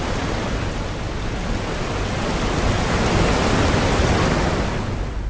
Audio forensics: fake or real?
real